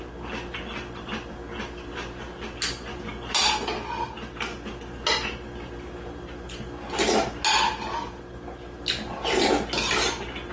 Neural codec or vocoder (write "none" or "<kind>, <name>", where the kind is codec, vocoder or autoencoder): none